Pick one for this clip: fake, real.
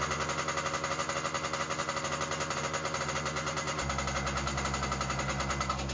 real